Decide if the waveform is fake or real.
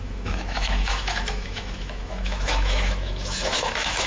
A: fake